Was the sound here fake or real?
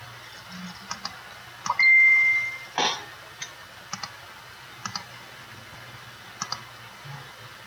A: real